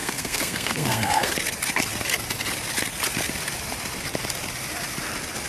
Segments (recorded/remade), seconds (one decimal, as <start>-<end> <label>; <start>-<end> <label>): 0.0-1.3 remade; 1.3-5.5 recorded